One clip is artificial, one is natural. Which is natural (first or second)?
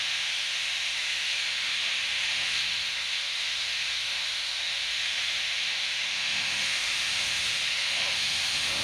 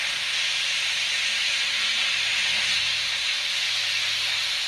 second